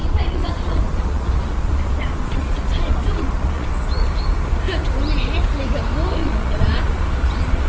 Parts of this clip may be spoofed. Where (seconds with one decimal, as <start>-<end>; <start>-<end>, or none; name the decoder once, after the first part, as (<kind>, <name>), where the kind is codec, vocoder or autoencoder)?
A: 0.0-3.7 (vocoder, Vocos); 6.2-7.7